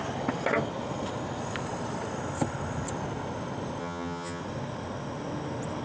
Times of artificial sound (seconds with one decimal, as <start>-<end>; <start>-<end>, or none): 3.8-4.4